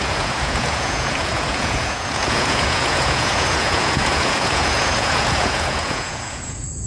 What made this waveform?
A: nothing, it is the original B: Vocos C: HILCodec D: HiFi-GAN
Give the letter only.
B